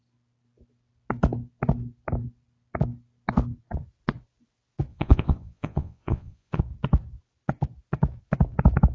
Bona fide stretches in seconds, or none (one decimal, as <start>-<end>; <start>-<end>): 0.0-4.9; 6.6-8.9